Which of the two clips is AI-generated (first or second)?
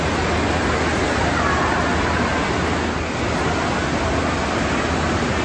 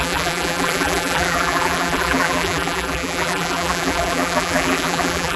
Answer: second